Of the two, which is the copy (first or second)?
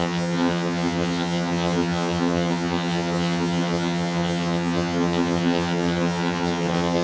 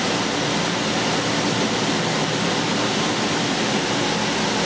first